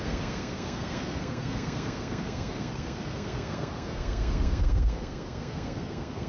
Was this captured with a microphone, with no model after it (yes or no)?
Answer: no